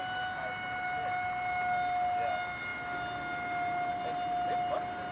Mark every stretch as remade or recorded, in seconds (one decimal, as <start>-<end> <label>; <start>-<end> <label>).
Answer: 0.0-5.1 recorded